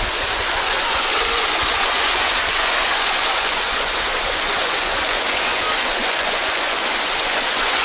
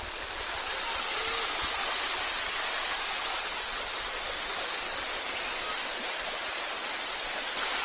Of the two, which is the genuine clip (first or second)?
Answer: second